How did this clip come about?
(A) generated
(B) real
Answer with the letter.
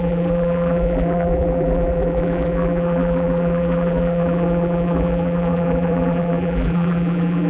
A